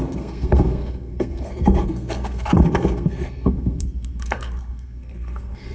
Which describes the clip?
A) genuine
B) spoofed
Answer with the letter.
B